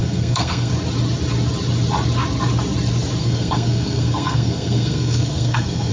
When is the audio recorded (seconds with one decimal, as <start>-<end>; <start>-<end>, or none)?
0.7-3.2